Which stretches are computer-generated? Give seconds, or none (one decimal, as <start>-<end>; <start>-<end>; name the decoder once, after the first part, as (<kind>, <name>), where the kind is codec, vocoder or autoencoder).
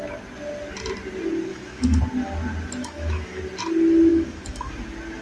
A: 1.5-2.0 (autoencoder, DAC-VAE); 2.8-3.4; 4.1-4.7